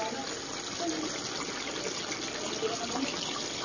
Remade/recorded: recorded